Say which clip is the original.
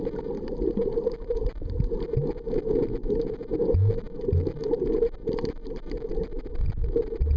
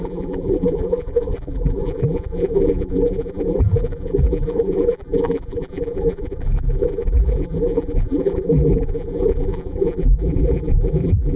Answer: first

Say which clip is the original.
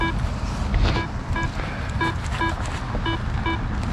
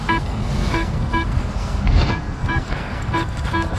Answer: first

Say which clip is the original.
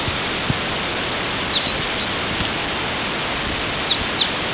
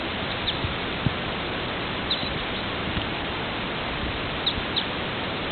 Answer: first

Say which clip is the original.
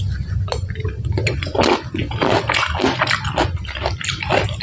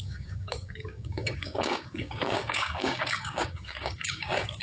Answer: first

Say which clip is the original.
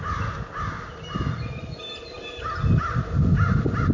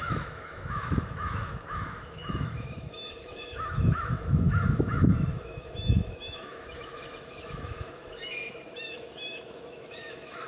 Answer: first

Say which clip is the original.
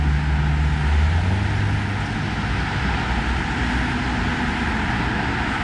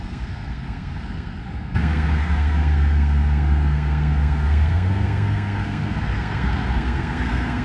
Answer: first